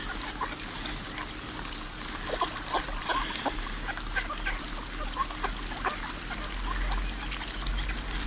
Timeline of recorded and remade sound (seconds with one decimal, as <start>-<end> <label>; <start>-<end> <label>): 0.0-8.3 recorded